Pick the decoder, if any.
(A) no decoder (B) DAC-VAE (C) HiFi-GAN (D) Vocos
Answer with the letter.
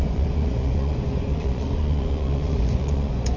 D